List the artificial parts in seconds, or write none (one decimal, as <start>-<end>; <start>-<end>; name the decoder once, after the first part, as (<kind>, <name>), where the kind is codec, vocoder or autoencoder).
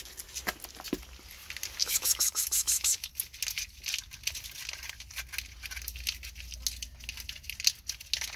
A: 1.8-3.1 (autoencoder, DAC-VAE)